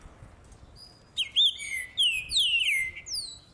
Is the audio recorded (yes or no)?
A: yes